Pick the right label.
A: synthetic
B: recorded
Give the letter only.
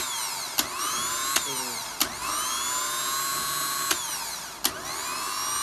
B